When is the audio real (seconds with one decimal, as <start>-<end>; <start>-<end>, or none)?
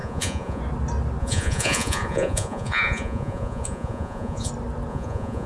0.6-1.2; 4.5-4.9